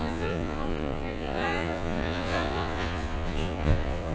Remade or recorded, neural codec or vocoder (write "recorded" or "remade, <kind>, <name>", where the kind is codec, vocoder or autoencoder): remade, vocoder, Vocos